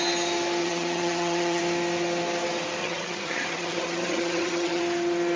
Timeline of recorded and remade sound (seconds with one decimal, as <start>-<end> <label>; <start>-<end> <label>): 0.0-0.6 recorded; 0.6-1.6 remade; 1.6-2.8 recorded; 2.8-4.8 remade; 4.8-5.4 recorded